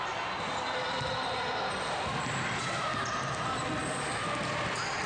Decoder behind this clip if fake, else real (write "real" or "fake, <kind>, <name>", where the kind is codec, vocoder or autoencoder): real